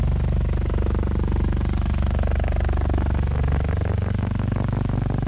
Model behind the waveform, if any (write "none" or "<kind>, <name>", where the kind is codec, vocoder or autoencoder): codec, DAC